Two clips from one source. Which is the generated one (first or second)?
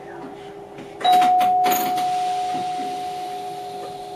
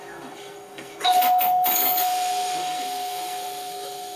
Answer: second